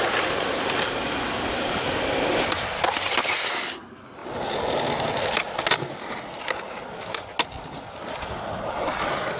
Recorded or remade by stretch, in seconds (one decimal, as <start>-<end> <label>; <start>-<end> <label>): 0.0-9.4 recorded